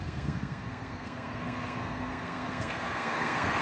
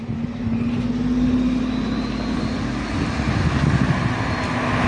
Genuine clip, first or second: second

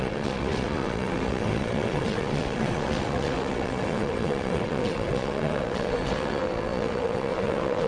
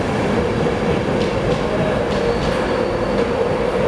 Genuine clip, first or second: second